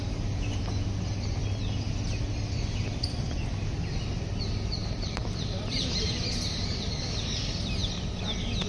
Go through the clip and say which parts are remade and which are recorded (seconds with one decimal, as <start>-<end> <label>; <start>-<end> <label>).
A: 0.0-4.8 recorded; 4.8-6.9 remade; 6.9-8.7 recorded